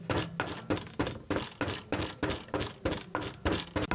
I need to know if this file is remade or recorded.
recorded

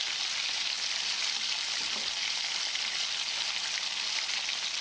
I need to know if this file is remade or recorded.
recorded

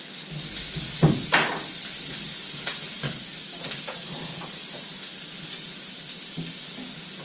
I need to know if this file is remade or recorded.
recorded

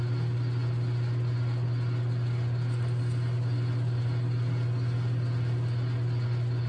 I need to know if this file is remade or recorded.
recorded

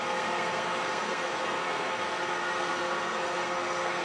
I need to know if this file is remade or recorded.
remade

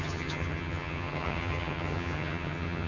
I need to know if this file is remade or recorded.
remade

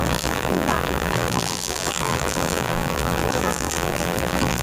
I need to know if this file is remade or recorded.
remade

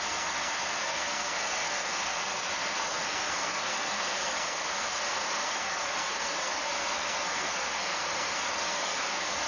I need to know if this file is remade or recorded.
remade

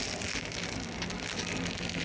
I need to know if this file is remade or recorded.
recorded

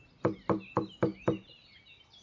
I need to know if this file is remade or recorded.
recorded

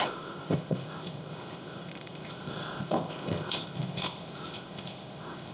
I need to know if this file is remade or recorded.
remade